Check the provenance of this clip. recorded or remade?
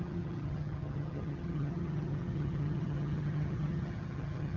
remade